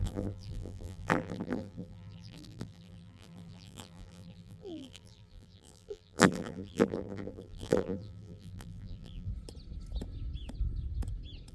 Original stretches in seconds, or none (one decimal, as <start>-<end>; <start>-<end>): 9.3-11.5